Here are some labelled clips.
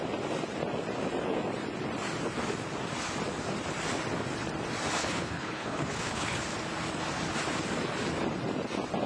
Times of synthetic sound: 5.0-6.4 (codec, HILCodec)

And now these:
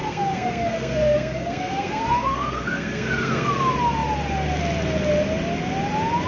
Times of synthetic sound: 0.0-3.5 (codec, SNAC)

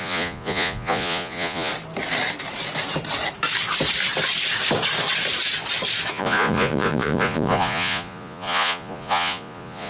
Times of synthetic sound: 0.0-1.7 (vocoder, Vocos); 6.1-9.9

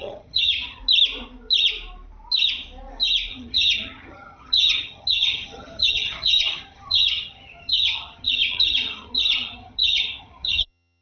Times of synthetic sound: 0.0-0.8 (vocoder, HiFi-GAN); 3.3-11.0

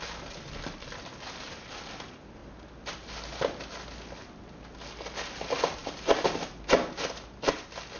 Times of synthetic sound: none

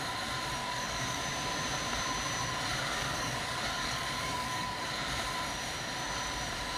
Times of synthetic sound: 0.6-1.2 (codec, DAC); 2.7-4.9